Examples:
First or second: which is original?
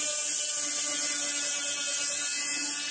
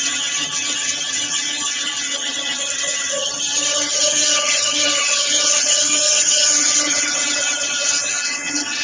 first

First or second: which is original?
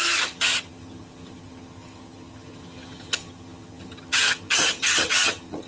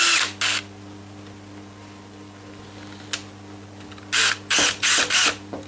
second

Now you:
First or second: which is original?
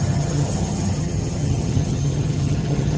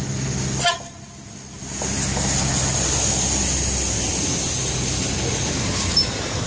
second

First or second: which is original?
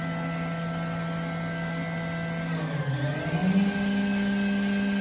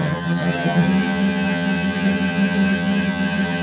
first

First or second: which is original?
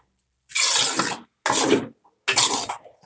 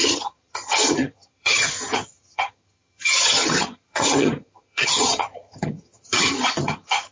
first